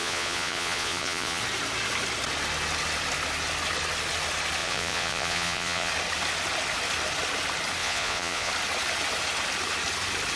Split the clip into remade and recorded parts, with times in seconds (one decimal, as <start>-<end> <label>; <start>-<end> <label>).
0.0-1.4 remade; 1.4-4.6 recorded; 4.6-5.9 remade; 5.9-7.8 recorded; 7.8-8.5 remade; 8.5-10.4 recorded